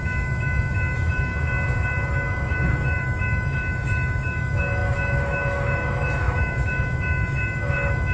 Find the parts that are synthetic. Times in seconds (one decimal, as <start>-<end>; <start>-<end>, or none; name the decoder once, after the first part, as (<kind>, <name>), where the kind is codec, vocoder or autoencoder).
0.0-1.3 (autoencoder, DAC-VAE); 2.1-8.1